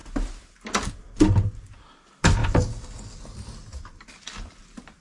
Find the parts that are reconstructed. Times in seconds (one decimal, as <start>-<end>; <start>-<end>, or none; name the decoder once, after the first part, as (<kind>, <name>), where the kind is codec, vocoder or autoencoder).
none